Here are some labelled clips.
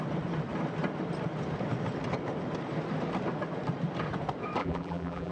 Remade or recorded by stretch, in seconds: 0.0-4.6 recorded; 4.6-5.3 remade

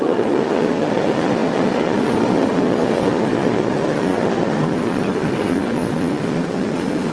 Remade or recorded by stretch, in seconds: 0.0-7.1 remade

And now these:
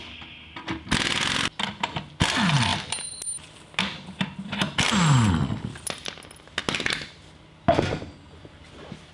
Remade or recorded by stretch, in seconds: 0.0-9.1 recorded

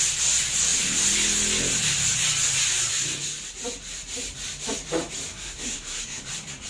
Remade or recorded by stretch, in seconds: 0.0-5.3 recorded; 5.3-6.2 remade; 6.2-6.7 recorded

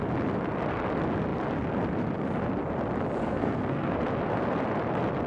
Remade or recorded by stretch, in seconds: 0.0-3.2 recorded; 3.2-4.0 remade; 4.0-5.3 recorded